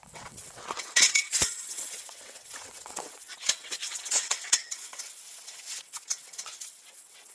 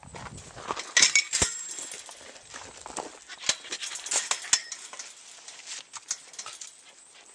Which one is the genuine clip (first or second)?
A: second